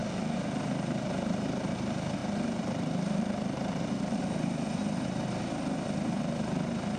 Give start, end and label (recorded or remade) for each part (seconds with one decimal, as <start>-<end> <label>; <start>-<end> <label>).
0.0-2.2 recorded; 2.2-4.2 remade; 4.2-7.0 recorded